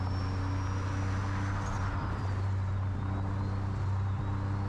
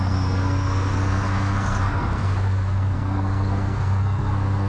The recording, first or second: first